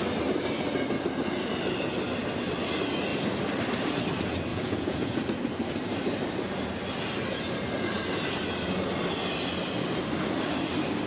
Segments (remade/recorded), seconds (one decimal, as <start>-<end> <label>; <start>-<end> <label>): 0.0-4.5 recorded; 4.5-5.2 remade; 5.2-11.1 recorded